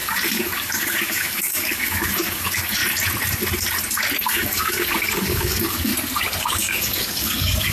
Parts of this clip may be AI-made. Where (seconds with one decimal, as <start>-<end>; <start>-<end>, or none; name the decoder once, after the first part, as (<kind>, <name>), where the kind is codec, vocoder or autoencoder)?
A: 0.0-2.8 (codec, DAC); 4.1-5.9; 6.4-7.7